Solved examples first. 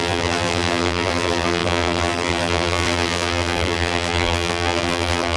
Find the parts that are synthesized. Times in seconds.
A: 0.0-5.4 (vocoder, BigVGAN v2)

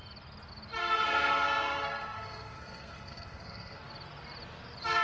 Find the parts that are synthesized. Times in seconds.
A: 0.8-3.8 (codec, SNAC)

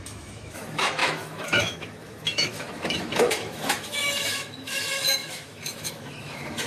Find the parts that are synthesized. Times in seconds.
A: 0.0-6.7 (autoencoder, DAC-VAE)

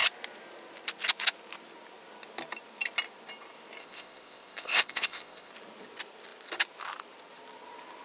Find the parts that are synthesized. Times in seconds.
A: 3.8-5.5 (codec, ZipCodec)

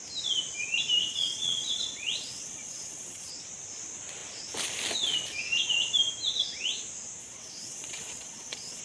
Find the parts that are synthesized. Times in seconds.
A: 1.0-3.3 (vocoder, WaveNeXt); 7.2-8.8